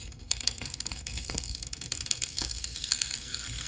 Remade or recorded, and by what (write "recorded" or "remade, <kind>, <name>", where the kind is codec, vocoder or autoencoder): remade, codec, SNAC